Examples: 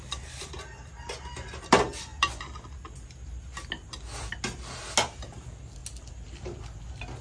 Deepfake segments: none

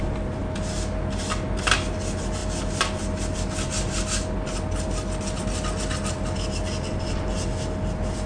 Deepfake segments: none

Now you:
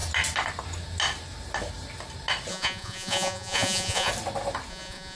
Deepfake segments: 2.5-4.1; 4.7-5.2

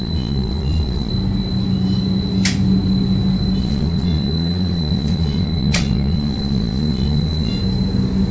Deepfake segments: 0.0-1.1; 3.6-7.5

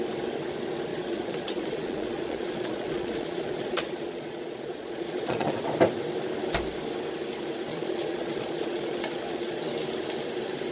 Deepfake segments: 0.9-5.6; 7.7-9.7

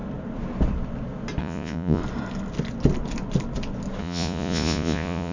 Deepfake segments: 1.4-2.0; 4.0-5.3